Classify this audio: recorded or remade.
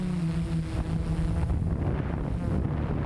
recorded